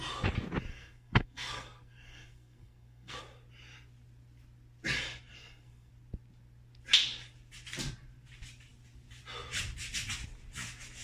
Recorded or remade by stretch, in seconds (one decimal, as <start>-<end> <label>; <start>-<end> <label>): 0.0-0.7 recorded; 0.7-3.2 remade; 3.2-5.3 recorded; 5.3-5.9 remade; 5.9-11.0 recorded